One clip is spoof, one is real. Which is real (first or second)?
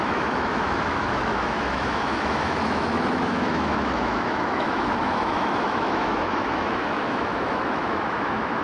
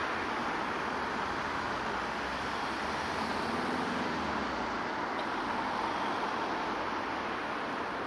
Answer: second